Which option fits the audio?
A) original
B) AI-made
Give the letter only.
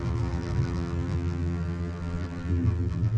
B